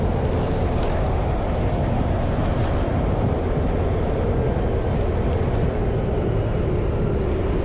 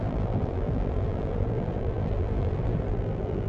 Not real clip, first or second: second